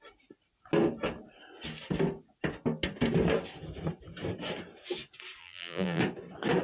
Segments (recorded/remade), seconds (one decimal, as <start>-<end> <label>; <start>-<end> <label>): 0.0-5.4 recorded; 5.4-6.0 remade; 6.0-6.6 recorded